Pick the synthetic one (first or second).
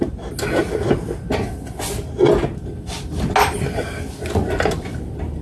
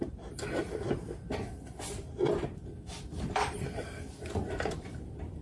second